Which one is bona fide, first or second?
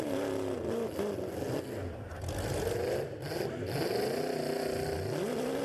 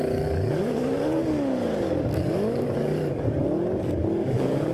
first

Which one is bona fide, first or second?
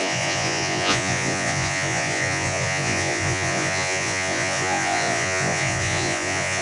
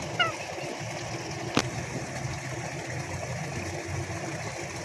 second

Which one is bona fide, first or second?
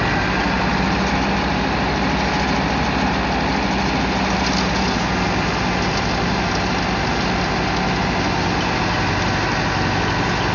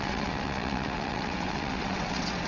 first